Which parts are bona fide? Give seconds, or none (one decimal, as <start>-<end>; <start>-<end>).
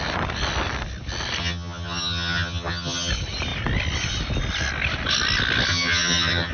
0.0-1.4; 3.1-5.7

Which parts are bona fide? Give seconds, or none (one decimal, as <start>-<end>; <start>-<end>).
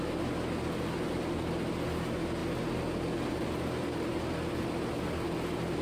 0.0-5.8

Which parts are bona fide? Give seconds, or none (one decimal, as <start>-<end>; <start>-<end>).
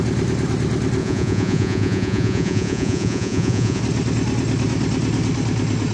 0.0-1.0; 3.8-5.9